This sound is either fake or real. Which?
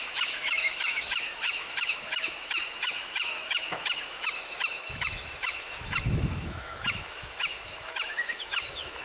fake